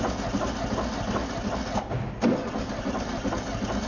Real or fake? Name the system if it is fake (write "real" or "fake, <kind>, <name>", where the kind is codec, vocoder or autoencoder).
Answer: real